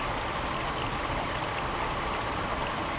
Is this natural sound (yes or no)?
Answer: yes